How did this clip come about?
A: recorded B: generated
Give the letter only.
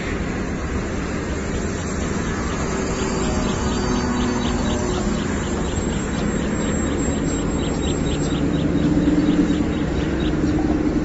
A